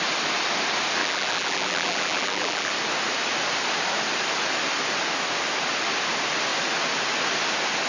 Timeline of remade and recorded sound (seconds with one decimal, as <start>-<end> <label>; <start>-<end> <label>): 0.0-1.0 recorded; 1.0-2.7 remade; 2.7-7.9 recorded